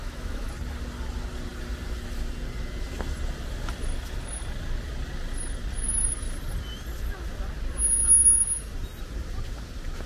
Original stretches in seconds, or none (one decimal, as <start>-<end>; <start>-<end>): 0.5-10.1